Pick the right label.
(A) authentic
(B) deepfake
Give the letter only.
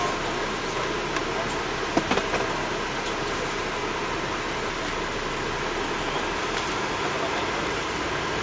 A